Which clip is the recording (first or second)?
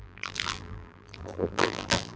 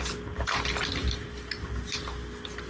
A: second